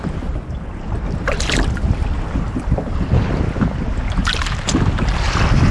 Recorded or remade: recorded